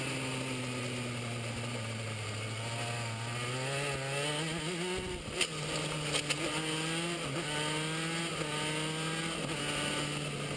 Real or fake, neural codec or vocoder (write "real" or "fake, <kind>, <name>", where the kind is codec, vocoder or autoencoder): real